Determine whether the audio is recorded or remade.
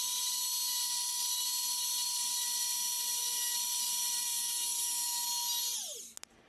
recorded